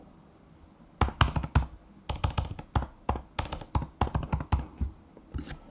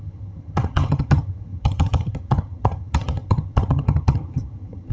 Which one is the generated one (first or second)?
second